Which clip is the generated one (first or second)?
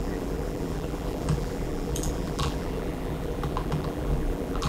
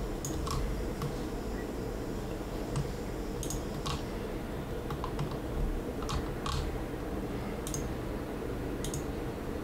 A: first